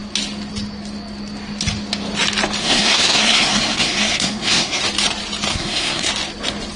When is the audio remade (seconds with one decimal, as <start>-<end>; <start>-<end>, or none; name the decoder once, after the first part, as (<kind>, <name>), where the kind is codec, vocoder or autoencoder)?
2.6-4.8 (codec, SNAC); 5.5-6.1